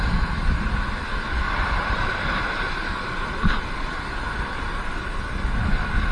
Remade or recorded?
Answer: recorded